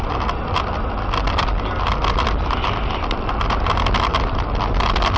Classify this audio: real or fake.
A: real